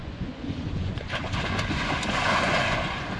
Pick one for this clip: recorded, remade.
remade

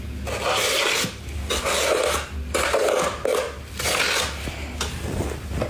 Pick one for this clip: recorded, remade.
recorded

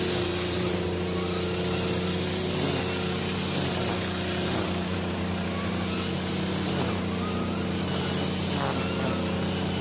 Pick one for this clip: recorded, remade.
recorded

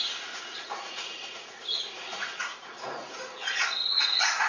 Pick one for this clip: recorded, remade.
remade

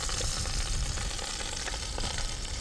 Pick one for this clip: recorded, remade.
recorded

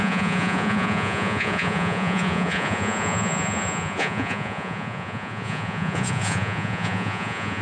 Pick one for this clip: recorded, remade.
remade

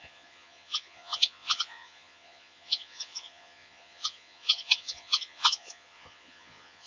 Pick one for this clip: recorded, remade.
remade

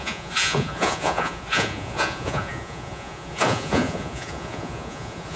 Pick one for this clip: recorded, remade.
remade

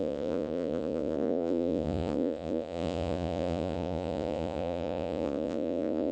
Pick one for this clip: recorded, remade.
remade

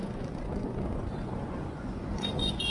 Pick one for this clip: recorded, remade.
remade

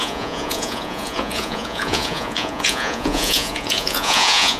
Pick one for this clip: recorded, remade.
remade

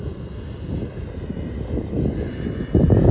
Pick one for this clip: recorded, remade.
recorded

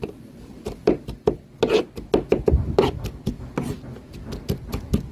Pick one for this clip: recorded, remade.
recorded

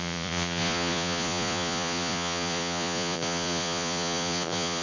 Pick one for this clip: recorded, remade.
remade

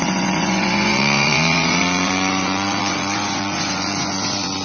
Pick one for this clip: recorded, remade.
remade